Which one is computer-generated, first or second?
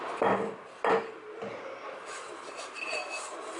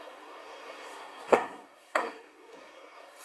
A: second